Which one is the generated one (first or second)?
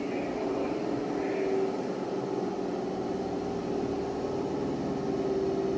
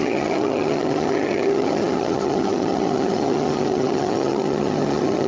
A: second